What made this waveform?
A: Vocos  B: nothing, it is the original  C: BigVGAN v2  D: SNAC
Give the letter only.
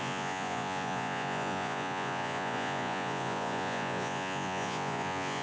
A